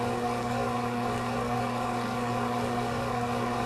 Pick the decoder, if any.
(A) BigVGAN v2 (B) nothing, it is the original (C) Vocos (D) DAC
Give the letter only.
D